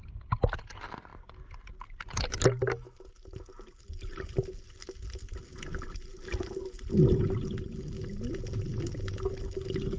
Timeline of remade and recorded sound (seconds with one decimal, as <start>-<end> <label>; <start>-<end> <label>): 0.0-10.0 recorded